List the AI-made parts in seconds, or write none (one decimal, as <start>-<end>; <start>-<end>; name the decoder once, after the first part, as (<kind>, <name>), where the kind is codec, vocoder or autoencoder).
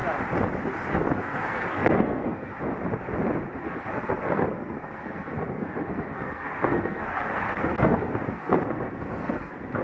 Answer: 1.2-2.5 (codec, SNAC); 3.6-9.8